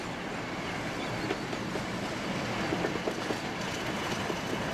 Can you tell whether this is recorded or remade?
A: recorded